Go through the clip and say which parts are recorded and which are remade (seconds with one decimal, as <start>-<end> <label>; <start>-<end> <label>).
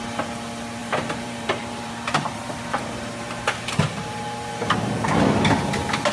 0.0-0.8 recorded; 0.8-4.5 remade; 4.5-6.1 recorded